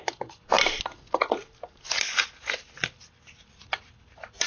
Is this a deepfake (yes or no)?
no